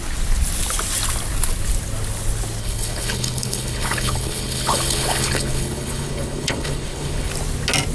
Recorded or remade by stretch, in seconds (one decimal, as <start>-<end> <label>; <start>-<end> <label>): 0.0-2.6 recorded; 2.6-7.3 remade; 7.3-7.9 recorded